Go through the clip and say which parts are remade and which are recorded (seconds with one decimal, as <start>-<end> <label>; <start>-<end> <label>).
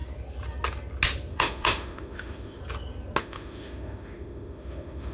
0.0-1.3 recorded; 1.3-2.6 remade; 2.6-3.2 recorded; 3.2-5.1 remade